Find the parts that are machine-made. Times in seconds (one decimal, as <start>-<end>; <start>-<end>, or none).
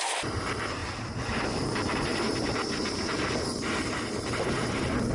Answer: none